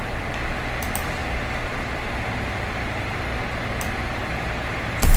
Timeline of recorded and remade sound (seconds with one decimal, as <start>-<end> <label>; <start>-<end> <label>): 0.0-0.7 remade; 0.7-1.2 recorded; 1.2-3.2 remade; 3.2-4.2 recorded; 4.2-5.2 remade